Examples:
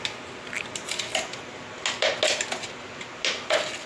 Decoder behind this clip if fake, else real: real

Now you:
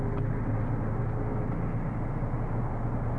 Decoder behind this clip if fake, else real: real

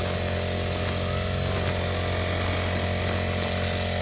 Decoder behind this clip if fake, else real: real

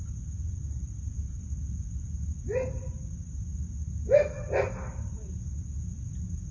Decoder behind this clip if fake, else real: real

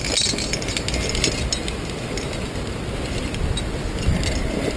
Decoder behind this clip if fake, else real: real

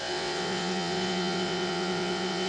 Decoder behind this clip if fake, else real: fake, vocoder, WaveNeXt